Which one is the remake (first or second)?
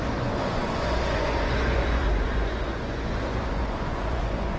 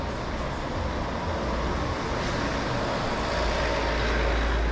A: first